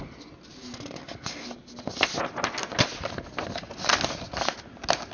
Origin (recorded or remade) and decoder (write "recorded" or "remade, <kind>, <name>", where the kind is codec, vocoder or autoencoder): recorded